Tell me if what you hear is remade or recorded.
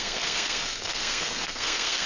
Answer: remade